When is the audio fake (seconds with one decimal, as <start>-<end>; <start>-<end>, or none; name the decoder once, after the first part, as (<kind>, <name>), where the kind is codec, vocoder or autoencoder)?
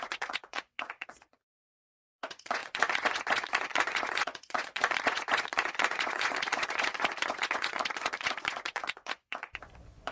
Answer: 0.0-10.1 (vocoder, Vocos)